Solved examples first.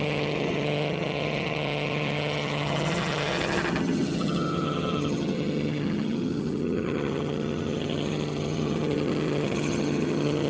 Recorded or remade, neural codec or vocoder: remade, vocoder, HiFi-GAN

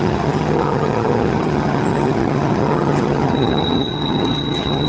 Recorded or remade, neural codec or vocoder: remade, vocoder, HiFi-GAN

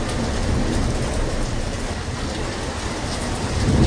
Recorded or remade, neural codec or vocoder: recorded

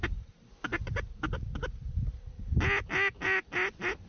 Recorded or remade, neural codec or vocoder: recorded